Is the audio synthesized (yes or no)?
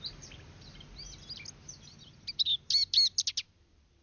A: no